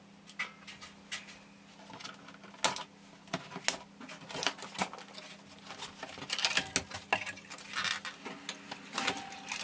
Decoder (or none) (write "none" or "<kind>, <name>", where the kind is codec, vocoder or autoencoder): none